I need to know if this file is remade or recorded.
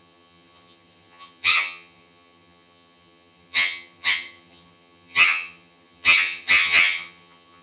remade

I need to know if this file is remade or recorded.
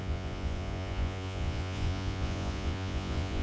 remade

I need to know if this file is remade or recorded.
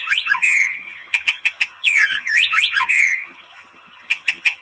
remade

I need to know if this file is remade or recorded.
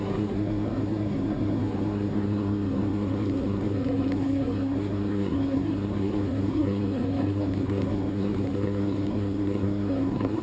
remade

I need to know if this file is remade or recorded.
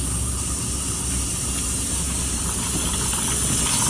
recorded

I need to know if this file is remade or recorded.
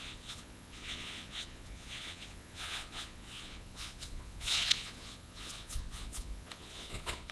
remade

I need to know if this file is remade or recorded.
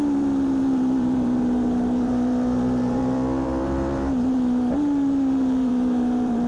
remade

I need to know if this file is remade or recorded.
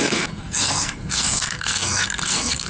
remade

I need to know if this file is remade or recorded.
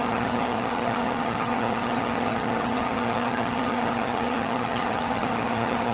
remade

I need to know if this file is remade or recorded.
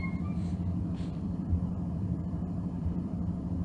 remade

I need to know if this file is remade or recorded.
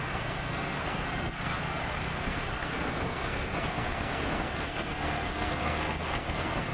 remade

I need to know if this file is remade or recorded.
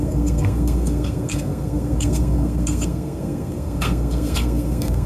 remade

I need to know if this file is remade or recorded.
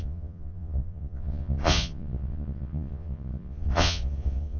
remade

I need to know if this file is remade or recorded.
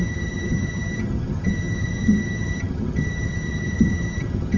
remade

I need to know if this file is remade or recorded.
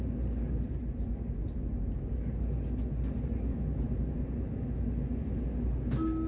recorded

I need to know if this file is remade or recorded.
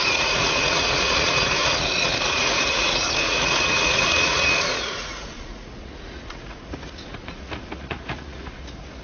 remade